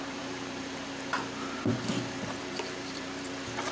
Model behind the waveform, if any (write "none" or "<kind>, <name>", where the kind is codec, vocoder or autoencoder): vocoder, BigVGAN v2